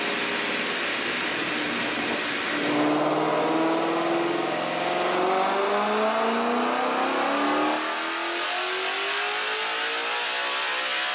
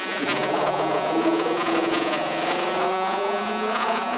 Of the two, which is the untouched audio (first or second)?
first